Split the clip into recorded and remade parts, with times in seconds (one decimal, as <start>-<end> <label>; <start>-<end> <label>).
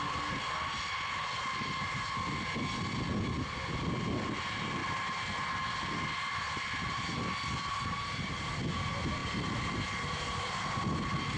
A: 0.0-11.4 recorded